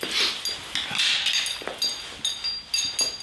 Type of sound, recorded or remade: recorded